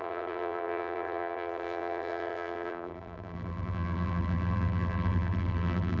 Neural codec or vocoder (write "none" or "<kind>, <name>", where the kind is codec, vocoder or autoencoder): vocoder, BigVGAN v2